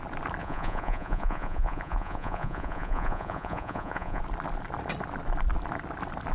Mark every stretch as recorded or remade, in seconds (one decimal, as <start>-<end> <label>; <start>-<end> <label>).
0.0-0.4 recorded; 0.4-4.2 remade; 4.2-6.3 recorded